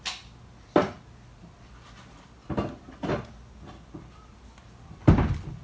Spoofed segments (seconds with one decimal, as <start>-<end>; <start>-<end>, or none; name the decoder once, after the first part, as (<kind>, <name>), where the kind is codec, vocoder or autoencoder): none